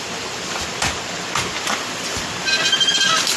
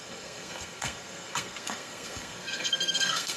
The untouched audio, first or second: first